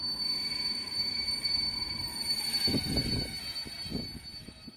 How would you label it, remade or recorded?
recorded